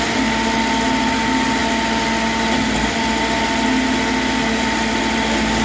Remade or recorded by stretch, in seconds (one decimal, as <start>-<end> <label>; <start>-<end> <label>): 0.0-5.6 recorded